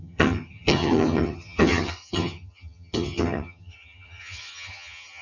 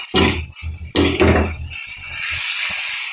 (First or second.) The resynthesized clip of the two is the first